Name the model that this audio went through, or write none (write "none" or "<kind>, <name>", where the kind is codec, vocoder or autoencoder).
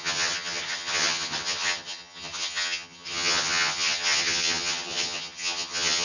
vocoder, HiFi-GAN